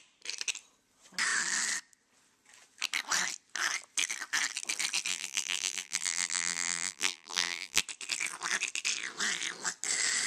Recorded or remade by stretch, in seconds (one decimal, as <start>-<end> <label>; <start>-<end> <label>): 0.0-5.1 recorded; 5.1-7.8 remade; 7.8-10.3 recorded